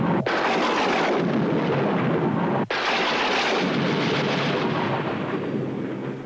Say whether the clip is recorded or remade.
recorded